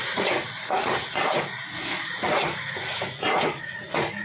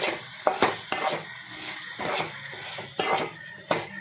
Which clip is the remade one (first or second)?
first